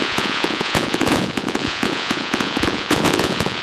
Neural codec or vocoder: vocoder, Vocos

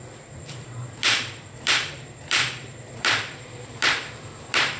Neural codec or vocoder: vocoder, BigVGAN v2